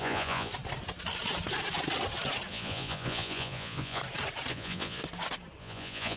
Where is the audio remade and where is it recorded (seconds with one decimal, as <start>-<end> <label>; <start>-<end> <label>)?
0.0-0.5 remade; 0.5-2.5 recorded; 2.5-4.0 remade; 4.0-4.5 recorded; 4.5-5.0 remade; 5.0-5.6 recorded; 5.6-6.2 remade